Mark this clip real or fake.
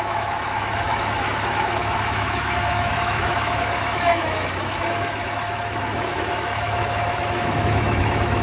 fake